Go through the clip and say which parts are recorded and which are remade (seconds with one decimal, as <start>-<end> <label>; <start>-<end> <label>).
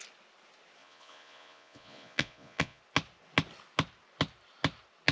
0.0-0.8 recorded; 0.8-2.8 remade; 2.8-5.1 recorded